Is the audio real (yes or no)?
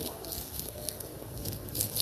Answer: no